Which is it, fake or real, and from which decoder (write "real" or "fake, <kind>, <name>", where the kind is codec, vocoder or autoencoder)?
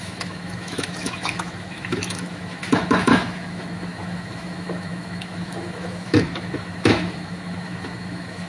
fake, autoencoder, DAC-VAE